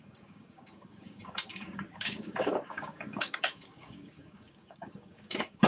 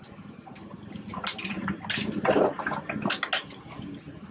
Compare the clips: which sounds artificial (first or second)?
first